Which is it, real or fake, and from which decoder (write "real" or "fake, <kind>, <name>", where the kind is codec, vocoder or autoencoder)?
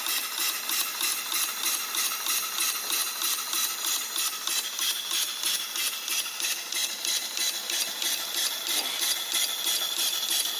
real